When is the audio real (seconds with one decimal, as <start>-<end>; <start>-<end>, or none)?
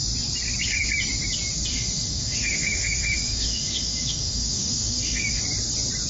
0.0-1.7; 5.4-6.1